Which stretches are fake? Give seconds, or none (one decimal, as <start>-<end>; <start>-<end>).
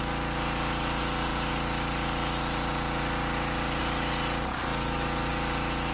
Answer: none